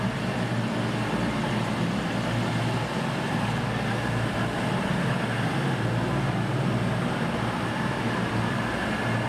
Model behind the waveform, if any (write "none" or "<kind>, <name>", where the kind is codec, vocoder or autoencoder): none